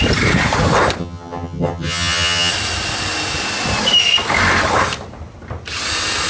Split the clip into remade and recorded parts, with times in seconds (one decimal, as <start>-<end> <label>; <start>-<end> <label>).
0.0-1.0 recorded; 1.0-2.5 remade; 2.5-6.3 recorded